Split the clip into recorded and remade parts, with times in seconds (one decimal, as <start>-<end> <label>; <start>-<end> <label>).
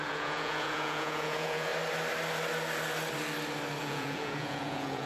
0.0-1.7 remade; 1.7-3.8 recorded; 3.8-5.1 remade